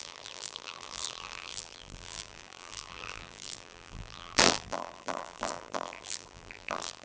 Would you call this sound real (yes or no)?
no